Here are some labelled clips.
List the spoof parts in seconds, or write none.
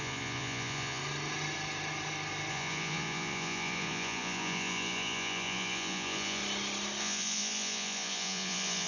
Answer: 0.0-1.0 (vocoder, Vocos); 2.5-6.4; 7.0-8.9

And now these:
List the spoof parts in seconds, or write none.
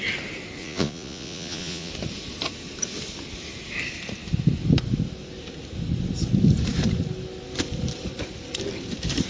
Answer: 0.6-1.9 (vocoder, Vocos)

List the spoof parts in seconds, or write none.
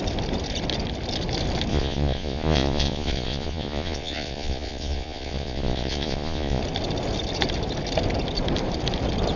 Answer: 1.7-6.6 (vocoder, Vocos)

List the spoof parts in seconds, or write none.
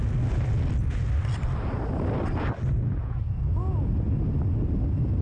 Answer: 3.0-3.9 (vocoder, Vocos)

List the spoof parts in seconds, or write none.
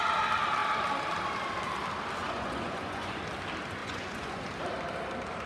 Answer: 2.2-3.2 (vocoder, Vocos); 3.8-4.4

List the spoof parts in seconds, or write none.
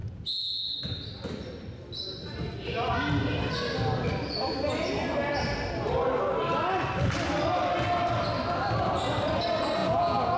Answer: 0.0-0.8 (vocoder, Vocos); 9.8-10.4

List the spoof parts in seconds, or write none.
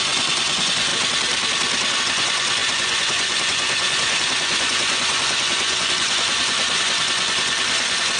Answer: 0.0-0.9 (vocoder, Vocos); 2.0-8.2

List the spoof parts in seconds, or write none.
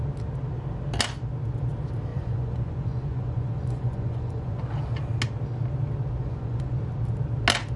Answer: 2.1-4.6 (vocoder, Vocos); 6.2-6.7